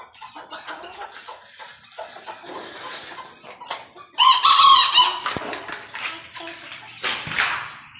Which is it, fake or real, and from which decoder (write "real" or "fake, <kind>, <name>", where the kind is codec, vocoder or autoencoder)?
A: real